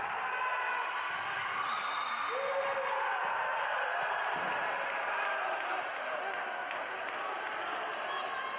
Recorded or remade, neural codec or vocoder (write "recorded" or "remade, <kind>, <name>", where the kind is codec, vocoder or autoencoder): recorded